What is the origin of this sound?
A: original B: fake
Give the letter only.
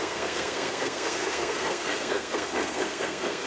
B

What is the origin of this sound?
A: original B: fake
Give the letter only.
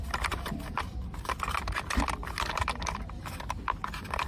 A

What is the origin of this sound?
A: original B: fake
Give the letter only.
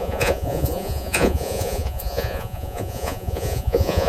B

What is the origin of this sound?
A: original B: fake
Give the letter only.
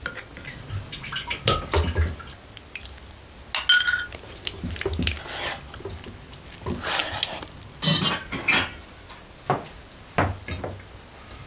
A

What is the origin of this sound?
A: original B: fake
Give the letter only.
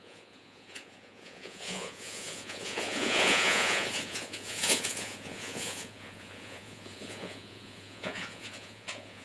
B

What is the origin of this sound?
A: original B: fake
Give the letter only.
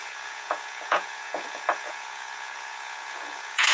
B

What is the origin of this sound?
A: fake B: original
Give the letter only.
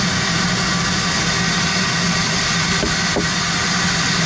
B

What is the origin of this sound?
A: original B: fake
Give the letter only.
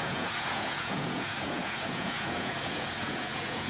B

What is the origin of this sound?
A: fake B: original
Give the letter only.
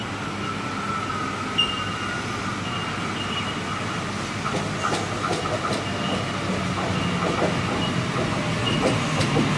B